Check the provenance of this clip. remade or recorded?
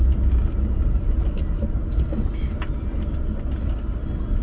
recorded